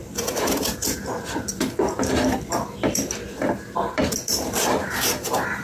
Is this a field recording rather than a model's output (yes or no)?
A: no